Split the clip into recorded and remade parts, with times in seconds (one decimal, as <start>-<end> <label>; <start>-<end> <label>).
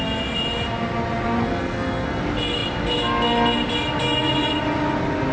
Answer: 0.0-1.4 recorded; 1.4-2.2 remade; 2.2-5.3 recorded